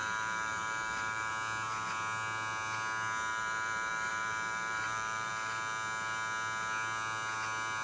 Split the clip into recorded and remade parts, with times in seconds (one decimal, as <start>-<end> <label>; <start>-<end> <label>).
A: 0.0-1.3 remade; 1.3-3.3 recorded; 3.3-5.3 remade; 5.3-7.8 recorded